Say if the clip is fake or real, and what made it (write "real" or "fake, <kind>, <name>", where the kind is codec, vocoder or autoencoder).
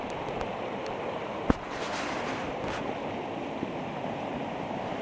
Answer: real